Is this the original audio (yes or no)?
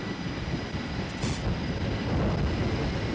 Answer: yes